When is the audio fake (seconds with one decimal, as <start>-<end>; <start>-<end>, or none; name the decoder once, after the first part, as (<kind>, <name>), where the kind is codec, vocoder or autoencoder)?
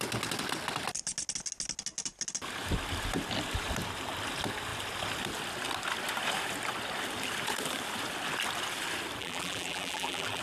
9.2-10.4 (vocoder, BigVGAN v2)